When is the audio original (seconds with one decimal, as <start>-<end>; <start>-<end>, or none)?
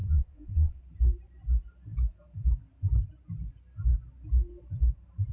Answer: 0.8-5.3